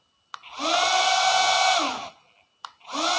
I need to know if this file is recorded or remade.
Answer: recorded